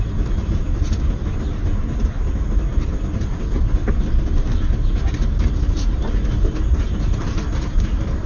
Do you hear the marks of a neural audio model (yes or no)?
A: no